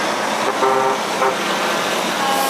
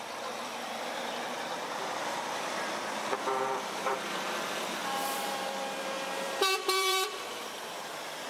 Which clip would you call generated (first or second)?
second